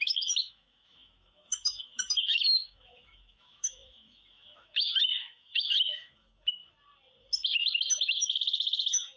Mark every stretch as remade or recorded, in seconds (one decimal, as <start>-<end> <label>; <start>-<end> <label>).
0.0-6.6 remade; 6.6-8.1 recorded; 8.1-9.2 remade